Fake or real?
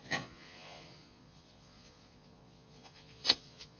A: fake